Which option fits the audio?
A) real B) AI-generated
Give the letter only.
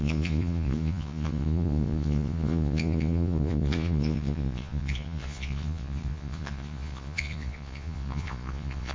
B